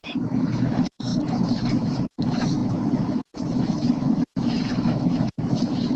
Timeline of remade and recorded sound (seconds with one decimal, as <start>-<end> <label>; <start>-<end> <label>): 0.0-6.0 remade